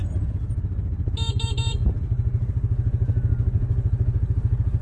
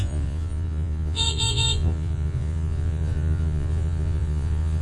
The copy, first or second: second